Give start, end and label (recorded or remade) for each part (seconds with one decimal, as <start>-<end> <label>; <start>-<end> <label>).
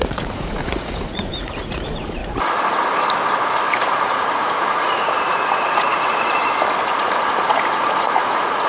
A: 0.0-2.2 remade; 2.2-3.7 recorded; 3.7-6.4 remade; 6.4-6.9 recorded; 6.9-8.7 remade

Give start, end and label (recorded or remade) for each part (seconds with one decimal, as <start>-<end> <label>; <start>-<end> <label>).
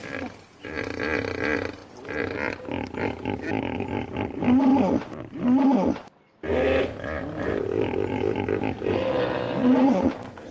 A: 0.0-9.6 recorded; 9.6-10.1 remade; 10.1-10.5 recorded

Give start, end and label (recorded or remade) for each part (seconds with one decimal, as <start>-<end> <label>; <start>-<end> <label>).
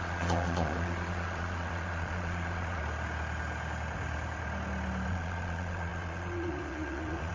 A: 0.0-2.8 remade; 2.8-5.1 recorded; 5.1-7.3 remade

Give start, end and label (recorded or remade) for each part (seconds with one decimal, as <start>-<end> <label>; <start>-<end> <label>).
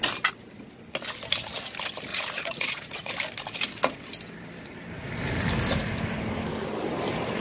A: 0.0-2.1 recorded; 2.1-3.1 remade; 3.1-7.4 recorded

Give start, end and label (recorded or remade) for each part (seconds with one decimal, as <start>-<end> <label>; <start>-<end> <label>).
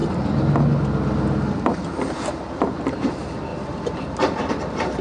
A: 0.0-5.0 recorded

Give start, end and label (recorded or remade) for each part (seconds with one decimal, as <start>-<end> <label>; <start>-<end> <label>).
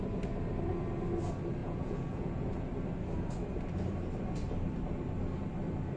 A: 0.0-1.6 recorded; 1.6-2.7 remade; 2.7-6.0 recorded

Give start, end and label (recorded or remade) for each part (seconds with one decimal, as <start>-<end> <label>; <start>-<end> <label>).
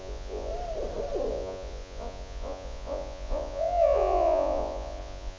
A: 0.0-0.5 remade; 0.5-1.3 recorded; 1.3-5.4 remade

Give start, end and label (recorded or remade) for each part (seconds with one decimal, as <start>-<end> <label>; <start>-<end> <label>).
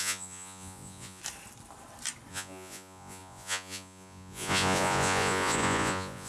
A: 0.0-1.2 remade; 1.2-2.3 recorded; 2.3-6.3 remade